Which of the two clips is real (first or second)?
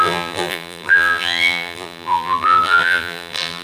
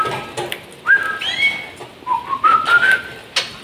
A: second